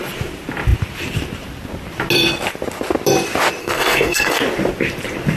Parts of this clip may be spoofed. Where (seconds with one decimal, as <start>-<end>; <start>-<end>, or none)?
3.6-4.4

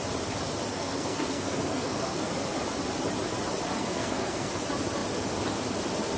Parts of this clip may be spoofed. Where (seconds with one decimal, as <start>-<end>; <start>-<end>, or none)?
0.7-2.3; 3.8-4.5

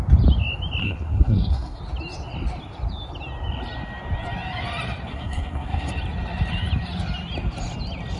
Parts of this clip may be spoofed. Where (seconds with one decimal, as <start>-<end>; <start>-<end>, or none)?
0.8-1.8; 5.1-5.9

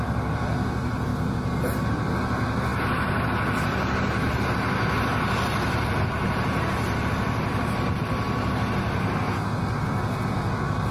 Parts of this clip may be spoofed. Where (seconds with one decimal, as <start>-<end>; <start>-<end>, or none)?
none

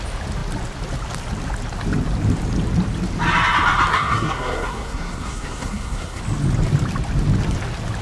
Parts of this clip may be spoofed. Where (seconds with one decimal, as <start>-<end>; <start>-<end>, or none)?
3.9-6.2

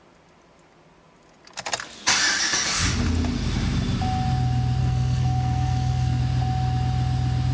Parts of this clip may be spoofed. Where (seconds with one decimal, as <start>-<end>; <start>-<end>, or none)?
4.8-6.2